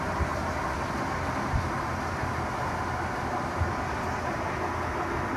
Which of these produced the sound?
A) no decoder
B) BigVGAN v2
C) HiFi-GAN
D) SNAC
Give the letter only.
A